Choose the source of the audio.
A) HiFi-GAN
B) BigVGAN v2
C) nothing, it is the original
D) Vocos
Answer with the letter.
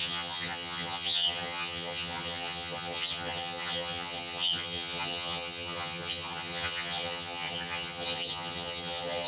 A